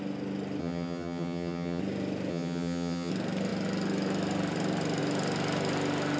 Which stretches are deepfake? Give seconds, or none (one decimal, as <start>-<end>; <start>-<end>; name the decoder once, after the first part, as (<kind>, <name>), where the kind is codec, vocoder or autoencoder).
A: 0.6-1.8 (vocoder, HiFi-GAN); 2.3-3.1